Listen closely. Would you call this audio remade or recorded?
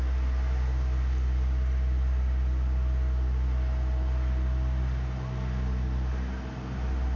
recorded